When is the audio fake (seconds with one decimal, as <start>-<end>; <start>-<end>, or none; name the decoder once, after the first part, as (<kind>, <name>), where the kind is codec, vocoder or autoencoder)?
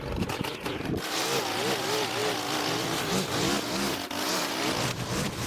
none